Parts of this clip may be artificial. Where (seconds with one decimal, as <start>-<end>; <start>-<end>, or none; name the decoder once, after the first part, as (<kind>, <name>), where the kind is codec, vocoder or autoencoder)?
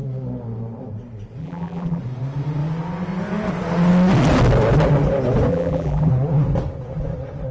1.4-2.0 (vocoder, BigVGAN v2); 5.5-6.1